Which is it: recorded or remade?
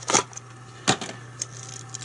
recorded